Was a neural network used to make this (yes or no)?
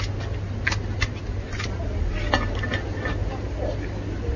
no